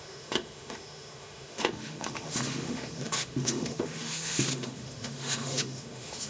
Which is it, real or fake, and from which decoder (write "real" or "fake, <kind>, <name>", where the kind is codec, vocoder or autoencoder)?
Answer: fake, autoencoder, DAC-VAE